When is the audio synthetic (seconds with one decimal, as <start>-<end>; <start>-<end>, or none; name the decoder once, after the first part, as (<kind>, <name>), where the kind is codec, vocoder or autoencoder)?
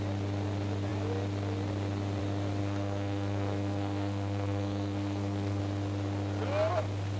2.6-5.6 (codec, SNAC)